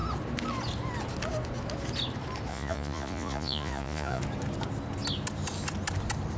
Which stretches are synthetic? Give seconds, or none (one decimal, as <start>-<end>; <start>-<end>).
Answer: 2.5-4.2